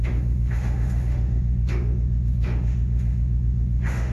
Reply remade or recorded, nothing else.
remade